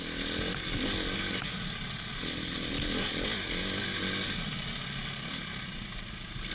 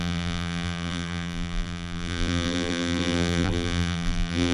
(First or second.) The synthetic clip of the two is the second